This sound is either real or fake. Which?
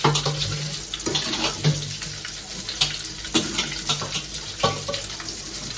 real